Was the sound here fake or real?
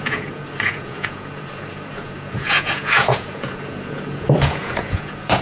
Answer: fake